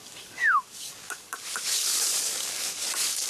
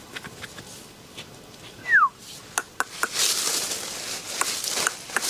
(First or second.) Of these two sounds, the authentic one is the second